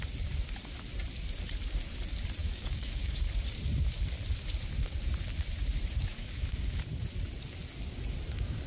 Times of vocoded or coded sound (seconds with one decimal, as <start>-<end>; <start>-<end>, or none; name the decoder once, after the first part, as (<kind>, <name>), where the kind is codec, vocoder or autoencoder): 2.4-3.2 (codec, DAC); 6.2-6.7